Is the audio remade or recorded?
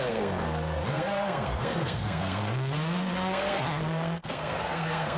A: remade